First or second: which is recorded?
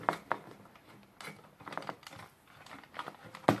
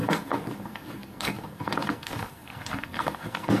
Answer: first